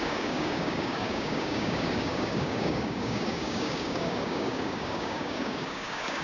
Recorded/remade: remade